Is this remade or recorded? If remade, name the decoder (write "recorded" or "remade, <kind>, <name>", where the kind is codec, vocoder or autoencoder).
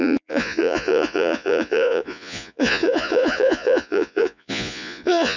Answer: remade, vocoder, Vocos